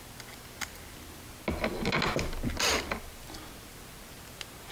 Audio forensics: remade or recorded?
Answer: recorded